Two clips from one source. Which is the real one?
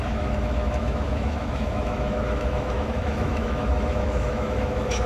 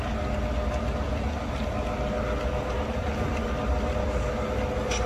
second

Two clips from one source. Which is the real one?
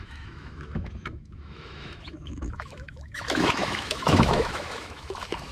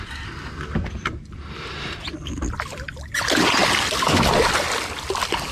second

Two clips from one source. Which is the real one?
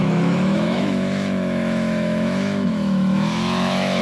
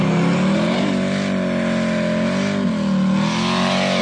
second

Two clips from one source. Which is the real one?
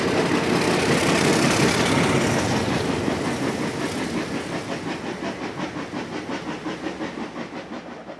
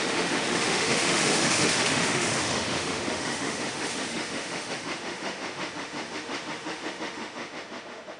first